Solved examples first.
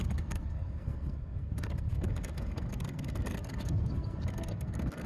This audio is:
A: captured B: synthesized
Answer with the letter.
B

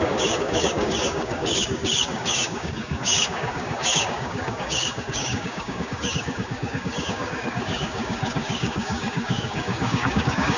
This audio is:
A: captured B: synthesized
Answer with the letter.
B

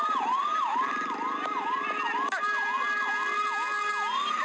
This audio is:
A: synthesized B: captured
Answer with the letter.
B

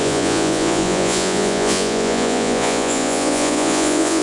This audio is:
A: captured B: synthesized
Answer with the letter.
B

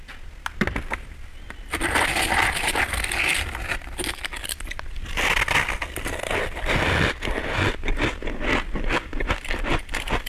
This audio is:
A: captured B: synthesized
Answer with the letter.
A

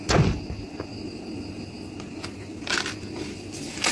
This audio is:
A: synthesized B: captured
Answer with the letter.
B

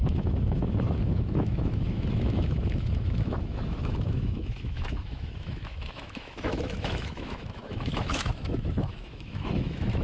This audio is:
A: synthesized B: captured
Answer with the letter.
A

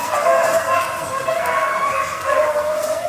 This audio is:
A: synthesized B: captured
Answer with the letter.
A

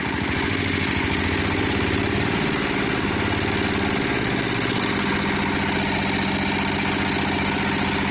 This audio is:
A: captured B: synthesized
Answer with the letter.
A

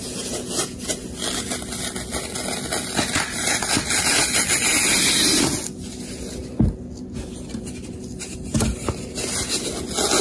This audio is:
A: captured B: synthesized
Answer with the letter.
A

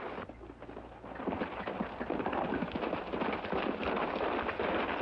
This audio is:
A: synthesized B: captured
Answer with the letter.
B